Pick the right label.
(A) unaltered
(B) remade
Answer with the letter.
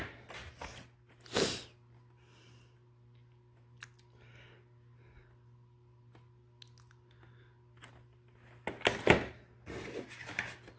A